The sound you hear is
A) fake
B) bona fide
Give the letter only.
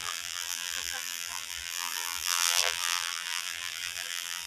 A